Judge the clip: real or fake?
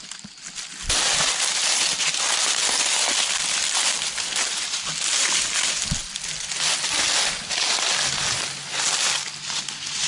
real